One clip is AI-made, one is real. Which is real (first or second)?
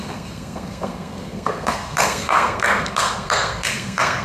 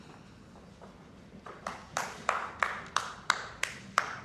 second